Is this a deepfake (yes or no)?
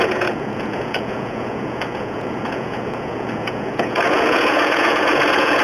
yes